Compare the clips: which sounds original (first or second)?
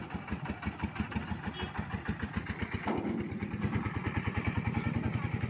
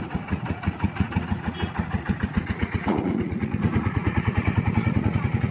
first